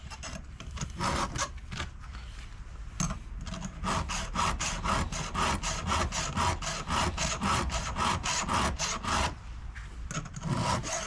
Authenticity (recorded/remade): recorded